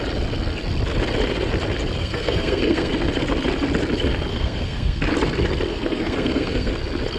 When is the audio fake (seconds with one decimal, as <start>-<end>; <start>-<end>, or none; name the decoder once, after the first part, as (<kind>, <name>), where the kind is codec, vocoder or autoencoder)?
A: 2.0-2.9 (codec, SNAC); 4.3-5.0; 5.7-6.7